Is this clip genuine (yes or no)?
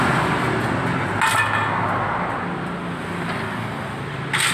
yes